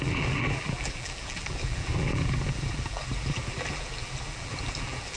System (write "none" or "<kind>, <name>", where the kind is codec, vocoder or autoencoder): vocoder, BigVGAN v2